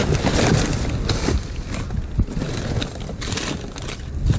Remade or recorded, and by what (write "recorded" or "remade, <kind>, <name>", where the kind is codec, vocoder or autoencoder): recorded